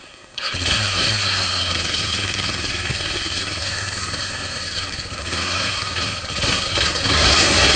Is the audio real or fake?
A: fake